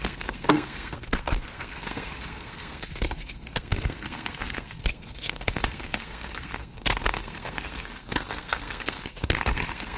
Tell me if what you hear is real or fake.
fake